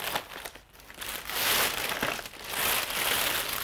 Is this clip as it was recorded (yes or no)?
yes